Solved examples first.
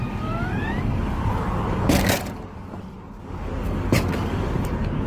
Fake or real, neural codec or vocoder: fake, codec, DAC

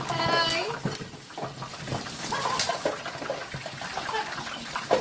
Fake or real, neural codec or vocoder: real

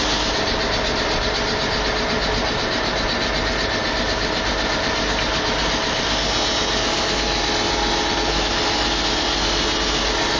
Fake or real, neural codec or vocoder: real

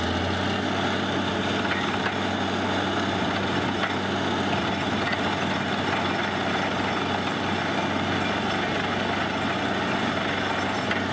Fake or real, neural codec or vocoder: real